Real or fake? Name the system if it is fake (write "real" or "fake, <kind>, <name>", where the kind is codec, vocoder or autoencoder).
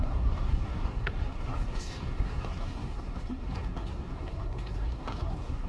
fake, codec, SNAC